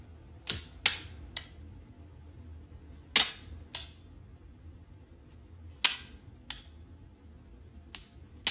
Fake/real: real